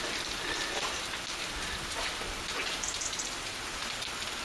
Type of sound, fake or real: real